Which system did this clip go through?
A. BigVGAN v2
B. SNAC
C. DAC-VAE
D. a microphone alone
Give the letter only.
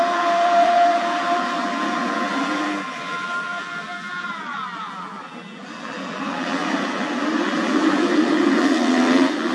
A